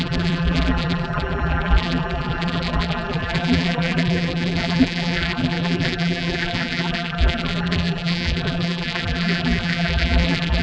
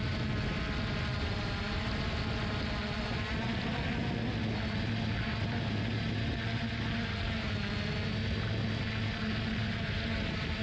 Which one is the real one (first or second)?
second